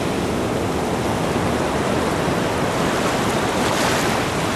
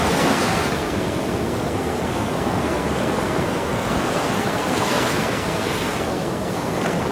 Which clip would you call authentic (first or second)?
first